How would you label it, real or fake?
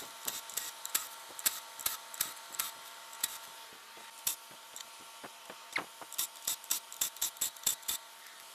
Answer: real